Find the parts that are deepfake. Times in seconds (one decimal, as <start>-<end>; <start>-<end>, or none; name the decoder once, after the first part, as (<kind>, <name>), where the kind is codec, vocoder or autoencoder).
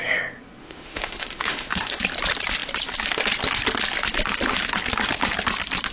0.6-2.0 (autoencoder, DAC-VAE)